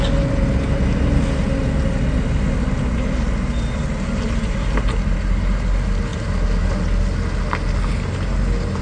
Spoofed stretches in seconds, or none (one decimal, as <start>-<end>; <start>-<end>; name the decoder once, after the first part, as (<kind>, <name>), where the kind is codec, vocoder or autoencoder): none